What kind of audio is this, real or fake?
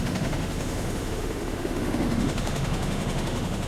fake